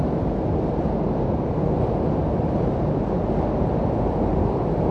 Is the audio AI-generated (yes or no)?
no